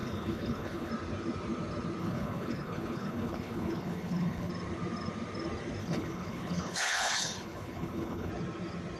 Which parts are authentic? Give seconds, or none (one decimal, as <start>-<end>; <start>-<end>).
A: 0.9-2.0; 4.5-5.8; 8.3-9.0